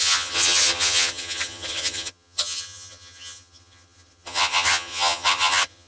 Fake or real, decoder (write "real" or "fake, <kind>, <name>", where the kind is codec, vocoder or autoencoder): fake, vocoder, HiFi-GAN